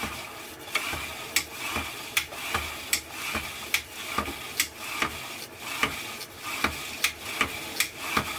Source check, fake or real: real